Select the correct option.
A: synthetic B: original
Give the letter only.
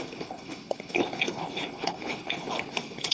A